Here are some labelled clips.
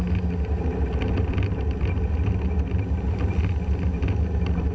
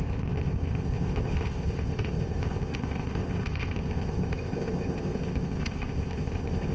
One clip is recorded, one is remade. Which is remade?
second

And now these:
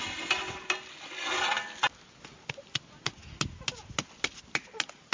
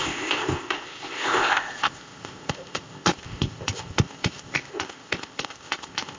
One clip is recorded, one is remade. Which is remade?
second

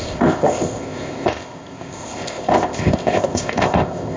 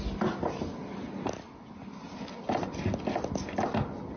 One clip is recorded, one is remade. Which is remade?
first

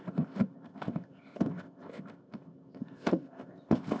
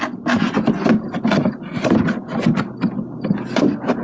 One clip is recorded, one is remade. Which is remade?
first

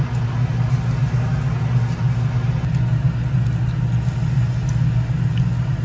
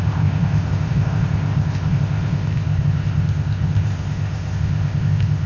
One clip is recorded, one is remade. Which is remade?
second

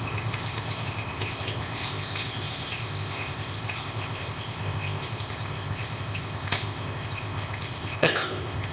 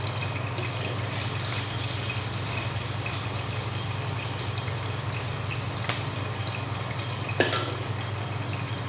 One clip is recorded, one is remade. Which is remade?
first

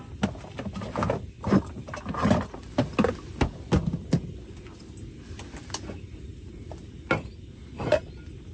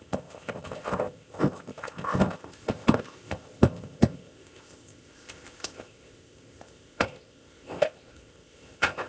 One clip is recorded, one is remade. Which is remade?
second